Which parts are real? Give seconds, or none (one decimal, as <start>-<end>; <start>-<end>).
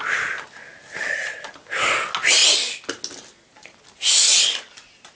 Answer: 0.0-5.2